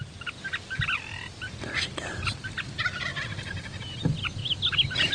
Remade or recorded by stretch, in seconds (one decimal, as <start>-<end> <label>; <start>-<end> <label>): 0.0-5.1 recorded